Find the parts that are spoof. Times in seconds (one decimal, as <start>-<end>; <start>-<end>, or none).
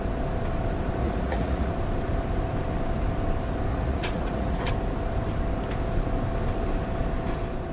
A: 1.0-1.7; 3.7-4.7